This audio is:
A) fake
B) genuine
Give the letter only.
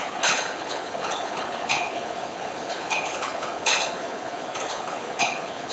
A